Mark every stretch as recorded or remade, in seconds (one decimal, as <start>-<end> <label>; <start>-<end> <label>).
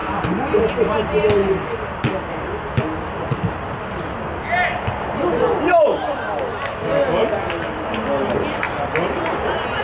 0.0-9.8 recorded